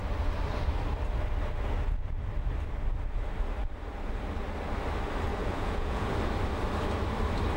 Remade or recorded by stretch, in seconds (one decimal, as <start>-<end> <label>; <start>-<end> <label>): 0.0-5.3 recorded; 5.3-6.1 remade; 6.1-7.6 recorded